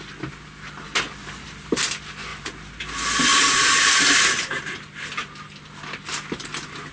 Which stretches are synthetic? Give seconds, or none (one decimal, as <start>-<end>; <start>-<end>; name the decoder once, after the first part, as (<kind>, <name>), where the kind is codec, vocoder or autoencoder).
1.2-1.8 (vocoder, BigVGAN v2); 2.3-2.8; 3.3-4.6